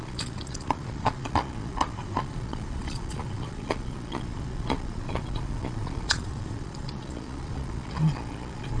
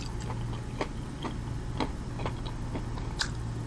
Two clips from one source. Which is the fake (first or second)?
first